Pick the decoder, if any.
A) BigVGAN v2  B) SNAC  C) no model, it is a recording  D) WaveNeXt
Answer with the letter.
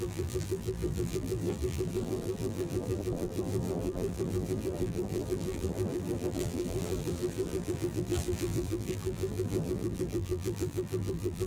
A